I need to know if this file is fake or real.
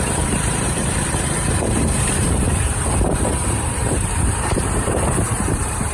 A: fake